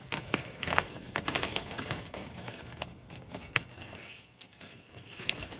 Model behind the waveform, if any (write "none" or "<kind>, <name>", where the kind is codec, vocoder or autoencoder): codec, SNAC